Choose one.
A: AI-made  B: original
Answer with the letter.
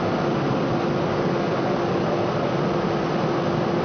B